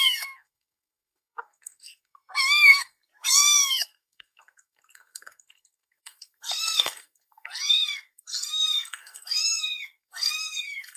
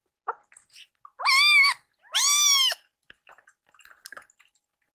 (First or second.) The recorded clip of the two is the second